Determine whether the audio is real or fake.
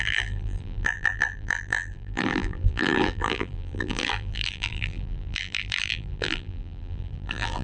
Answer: fake